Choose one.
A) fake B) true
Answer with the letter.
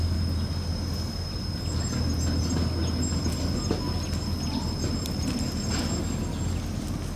B